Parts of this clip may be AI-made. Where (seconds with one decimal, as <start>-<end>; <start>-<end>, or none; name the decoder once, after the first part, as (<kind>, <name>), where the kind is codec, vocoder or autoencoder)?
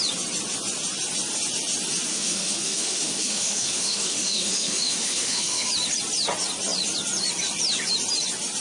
2.1-5.7 (autoencoder, DAC-VAE)